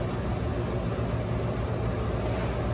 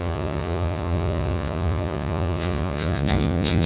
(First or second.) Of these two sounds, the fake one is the second